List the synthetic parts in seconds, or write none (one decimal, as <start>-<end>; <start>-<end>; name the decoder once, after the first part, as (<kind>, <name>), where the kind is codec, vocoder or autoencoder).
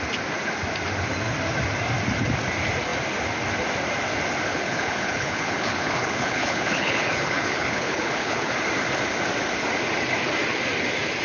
4.5-8.6 (codec, HILCodec)